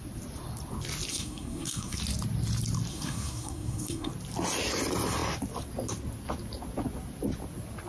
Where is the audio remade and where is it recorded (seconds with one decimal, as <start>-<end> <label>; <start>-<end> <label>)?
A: 0.0-1.1 recorded; 1.1-2.0 remade; 2.0-2.9 recorded; 2.9-4.1 remade; 4.1-7.9 recorded